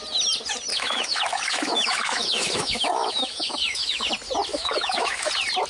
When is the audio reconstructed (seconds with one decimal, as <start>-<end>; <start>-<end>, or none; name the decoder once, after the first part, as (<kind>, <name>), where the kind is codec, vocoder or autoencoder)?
0.7-4.1 (autoencoder, DAC-VAE); 4.5-5.3

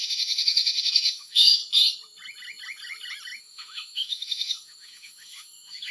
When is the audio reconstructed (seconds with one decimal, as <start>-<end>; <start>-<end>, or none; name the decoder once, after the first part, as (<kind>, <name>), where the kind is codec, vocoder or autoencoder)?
0.0-1.6 (autoencoder, DAC-VAE); 3.4-5.9

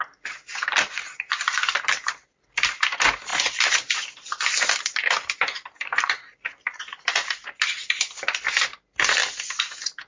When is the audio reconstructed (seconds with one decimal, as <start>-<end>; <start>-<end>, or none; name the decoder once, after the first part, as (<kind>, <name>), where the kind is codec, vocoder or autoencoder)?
0.5-2.5 (vocoder, BigVGAN v2); 9.2-9.7

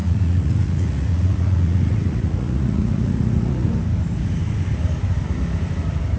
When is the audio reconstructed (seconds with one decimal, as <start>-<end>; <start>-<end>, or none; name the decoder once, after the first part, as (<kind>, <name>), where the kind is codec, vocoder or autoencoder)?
0.0-3.7 (vocoder, Vocos)

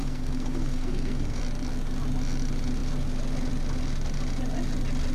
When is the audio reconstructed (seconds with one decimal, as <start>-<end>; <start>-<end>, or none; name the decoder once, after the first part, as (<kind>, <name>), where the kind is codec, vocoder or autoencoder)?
0.0-1.4 (codec, SNAC)